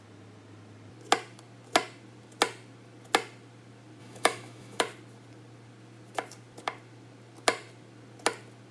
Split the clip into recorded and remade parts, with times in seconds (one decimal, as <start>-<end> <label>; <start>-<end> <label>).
0.0-4.0 recorded; 4.0-4.8 remade; 4.8-8.7 recorded